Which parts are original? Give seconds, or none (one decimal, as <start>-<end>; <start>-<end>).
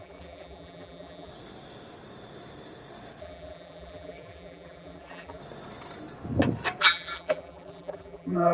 1.3-3.2; 5.4-6.8